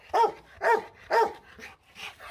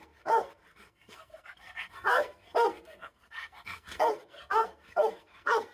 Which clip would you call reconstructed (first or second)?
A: second